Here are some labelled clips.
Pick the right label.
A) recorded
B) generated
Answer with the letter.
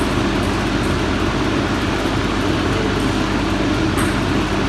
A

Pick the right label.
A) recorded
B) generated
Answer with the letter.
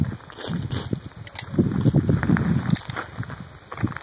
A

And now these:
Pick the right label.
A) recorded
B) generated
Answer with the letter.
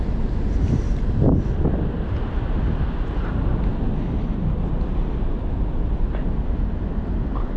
A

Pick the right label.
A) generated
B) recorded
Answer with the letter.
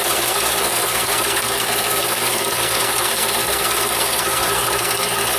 A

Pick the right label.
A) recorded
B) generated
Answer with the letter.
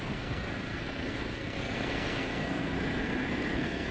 B